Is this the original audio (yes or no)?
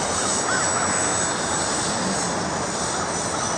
yes